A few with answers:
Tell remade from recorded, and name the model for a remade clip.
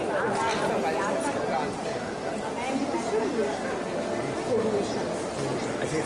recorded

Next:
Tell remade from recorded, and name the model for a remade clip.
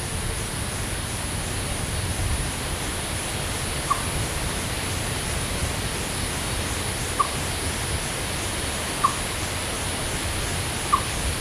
recorded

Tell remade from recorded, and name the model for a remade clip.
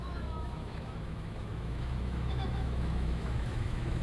remade, autoencoder, DAC-VAE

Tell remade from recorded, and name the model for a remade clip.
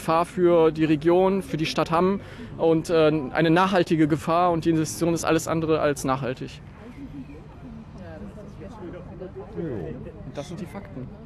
recorded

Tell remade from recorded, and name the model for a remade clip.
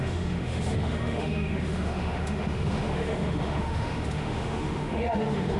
remade, autoencoder, DAC-VAE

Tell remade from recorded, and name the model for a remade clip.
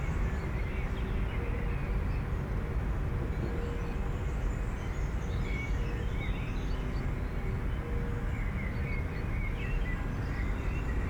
recorded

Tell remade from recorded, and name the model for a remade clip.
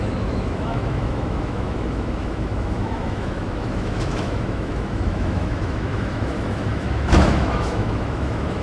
remade, autoencoder, DAC-VAE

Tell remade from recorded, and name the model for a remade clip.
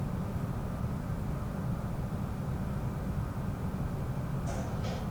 recorded